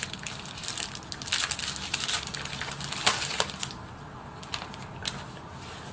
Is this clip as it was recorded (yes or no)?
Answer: yes